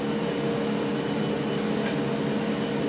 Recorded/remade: recorded